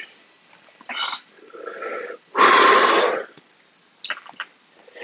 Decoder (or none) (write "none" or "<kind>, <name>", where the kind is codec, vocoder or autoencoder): none